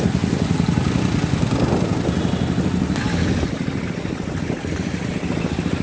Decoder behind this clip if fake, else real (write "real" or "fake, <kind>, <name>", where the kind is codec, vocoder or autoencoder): real